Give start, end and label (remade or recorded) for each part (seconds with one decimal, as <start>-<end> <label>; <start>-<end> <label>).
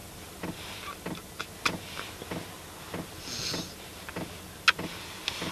0.0-5.5 recorded